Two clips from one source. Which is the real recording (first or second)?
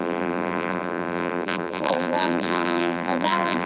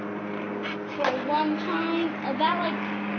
second